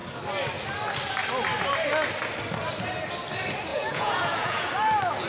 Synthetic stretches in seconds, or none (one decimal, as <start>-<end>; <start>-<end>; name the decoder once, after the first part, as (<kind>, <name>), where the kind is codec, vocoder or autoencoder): 3.7-4.7 (vocoder, Vocos)